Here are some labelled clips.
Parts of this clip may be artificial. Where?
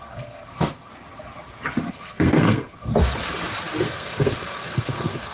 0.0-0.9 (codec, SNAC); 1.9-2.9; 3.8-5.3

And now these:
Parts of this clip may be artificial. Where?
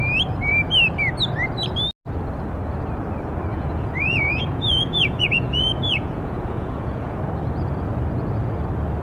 3.5-7.2 (vocoder, Vocos)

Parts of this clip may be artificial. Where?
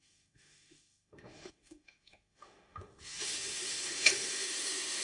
0.0-5.0 (autoencoder, DAC-VAE)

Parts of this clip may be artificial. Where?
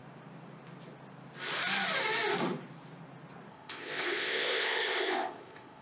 3.5-5.8 (codec, ZipCodec)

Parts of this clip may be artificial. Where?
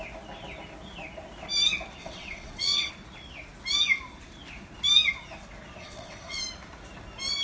2.0-2.9 (vocoder, WaveNeXt); 5.8-6.4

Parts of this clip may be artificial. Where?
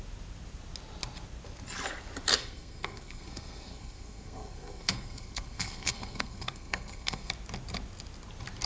2.3-7.3 (codec, SNAC)